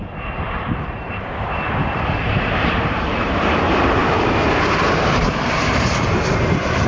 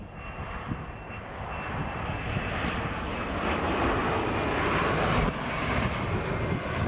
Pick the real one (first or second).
second